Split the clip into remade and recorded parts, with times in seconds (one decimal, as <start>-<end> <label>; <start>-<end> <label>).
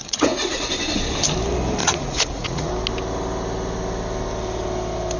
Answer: 0.0-0.7 remade; 0.7-1.8 recorded; 1.8-2.7 remade; 2.7-5.2 recorded